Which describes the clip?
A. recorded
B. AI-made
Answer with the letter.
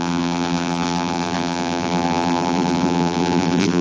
B